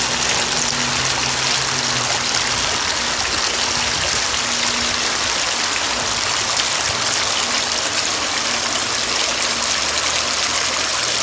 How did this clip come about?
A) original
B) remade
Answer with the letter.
A